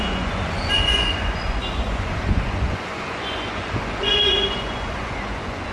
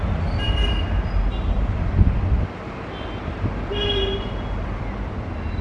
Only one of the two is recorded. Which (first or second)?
second